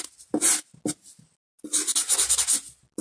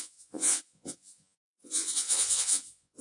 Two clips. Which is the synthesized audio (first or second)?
second